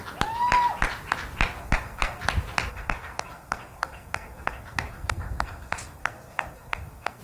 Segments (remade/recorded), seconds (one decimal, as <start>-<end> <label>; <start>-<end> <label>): 0.0-1.6 recorded; 1.6-2.2 remade; 2.2-2.7 recorded; 2.7-7.2 remade